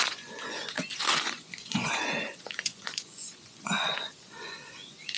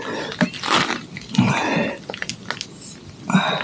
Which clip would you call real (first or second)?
second